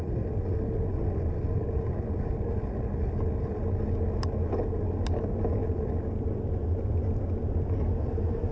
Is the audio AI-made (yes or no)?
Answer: no